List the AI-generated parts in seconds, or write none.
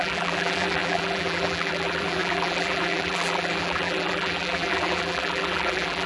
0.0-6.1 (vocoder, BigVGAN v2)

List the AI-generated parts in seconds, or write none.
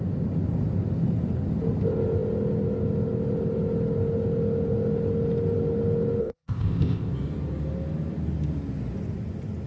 6.2-7.1 (codec, ZipCodec)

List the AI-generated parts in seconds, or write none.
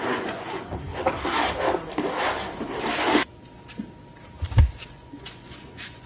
0.0-0.9 (vocoder, Vocos); 4.6-6.1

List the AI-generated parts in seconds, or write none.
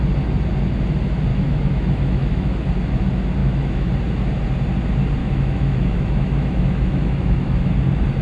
1.3-2.6 (autoencoder, DAC-VAE); 3.4-3.9; 5.2-7.7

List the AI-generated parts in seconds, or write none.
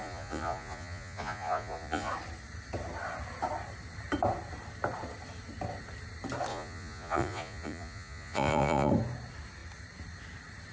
0.0-2.1 (vocoder, Vocos); 6.5-8.9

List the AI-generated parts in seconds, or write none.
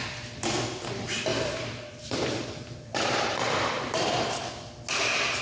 1.3-4.5 (vocoder, BigVGAN v2)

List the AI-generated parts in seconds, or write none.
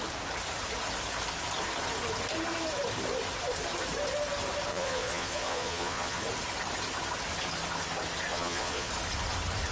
4.7-6.2 (vocoder, Vocos); 8.3-8.9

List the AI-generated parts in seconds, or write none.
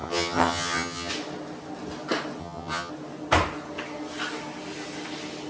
0.0-1.1 (vocoder, HiFi-GAN); 2.4-2.9